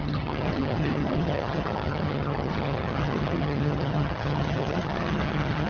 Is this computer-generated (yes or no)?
yes